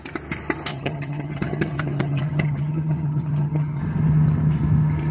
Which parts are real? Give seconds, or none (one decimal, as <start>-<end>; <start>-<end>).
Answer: 0.0-0.7; 3.8-5.1